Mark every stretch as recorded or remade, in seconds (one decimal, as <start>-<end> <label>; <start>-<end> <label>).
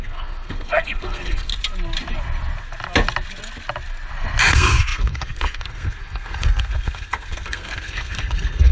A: 0.0-1.5 remade; 1.5-4.5 recorded; 4.5-8.7 remade